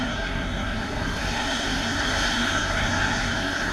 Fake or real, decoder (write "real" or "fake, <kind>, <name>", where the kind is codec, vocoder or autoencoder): fake, codec, SNAC